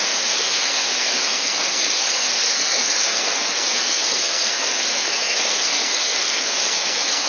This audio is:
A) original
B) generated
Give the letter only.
B